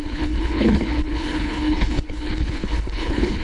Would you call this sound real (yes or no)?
no